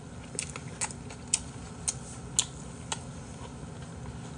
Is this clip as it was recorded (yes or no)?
yes